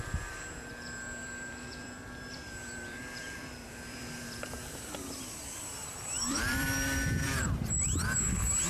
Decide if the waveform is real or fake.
fake